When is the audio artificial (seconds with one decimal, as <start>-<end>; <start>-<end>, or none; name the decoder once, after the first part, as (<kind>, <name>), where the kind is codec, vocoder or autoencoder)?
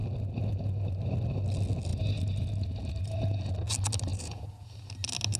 4.1-4.7 (vocoder, Vocos)